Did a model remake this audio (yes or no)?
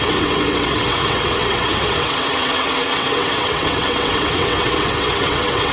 yes